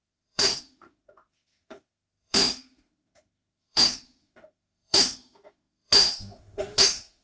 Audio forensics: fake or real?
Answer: fake